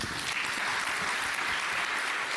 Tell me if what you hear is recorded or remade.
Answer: recorded